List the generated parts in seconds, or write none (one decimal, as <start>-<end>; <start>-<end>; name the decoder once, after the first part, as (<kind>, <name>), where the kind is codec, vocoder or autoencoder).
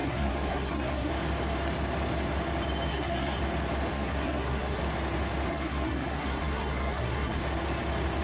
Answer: 0.0-1.1 (codec, SNAC); 2.9-3.4; 3.9-4.8; 5.5-7.4